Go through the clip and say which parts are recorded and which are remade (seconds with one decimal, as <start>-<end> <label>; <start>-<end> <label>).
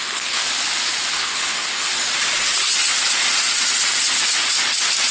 0.0-0.4 remade; 0.4-1.1 recorded; 1.1-1.9 remade; 1.9-5.1 recorded